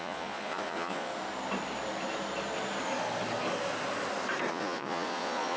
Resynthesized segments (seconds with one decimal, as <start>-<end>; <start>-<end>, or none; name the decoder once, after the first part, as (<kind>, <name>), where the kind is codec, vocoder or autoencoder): 0.0-1.1 (vocoder, Vocos); 4.5-5.6